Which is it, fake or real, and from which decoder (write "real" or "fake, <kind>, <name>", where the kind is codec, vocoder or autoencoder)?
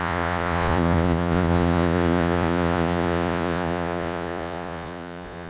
fake, vocoder, Vocos